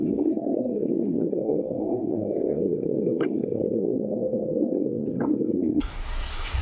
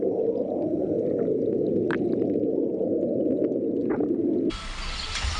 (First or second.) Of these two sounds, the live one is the second